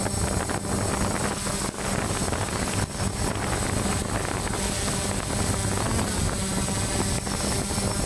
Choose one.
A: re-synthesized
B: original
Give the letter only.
B